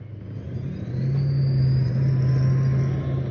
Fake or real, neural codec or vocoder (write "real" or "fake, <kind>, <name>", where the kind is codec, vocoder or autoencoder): real